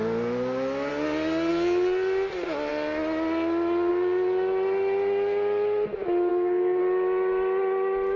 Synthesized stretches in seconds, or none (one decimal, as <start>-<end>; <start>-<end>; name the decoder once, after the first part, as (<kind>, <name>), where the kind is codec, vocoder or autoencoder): 6.3-6.8 (codec, SNAC)